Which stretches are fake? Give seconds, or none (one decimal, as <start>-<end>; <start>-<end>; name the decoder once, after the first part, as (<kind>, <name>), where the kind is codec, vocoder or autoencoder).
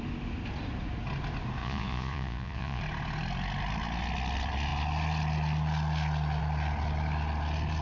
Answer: 1.6-2.8 (vocoder, Vocos)